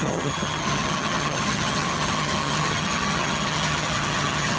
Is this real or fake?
fake